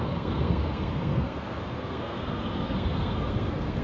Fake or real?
fake